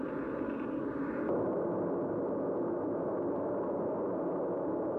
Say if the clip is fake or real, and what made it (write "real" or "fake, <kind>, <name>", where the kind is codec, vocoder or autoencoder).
real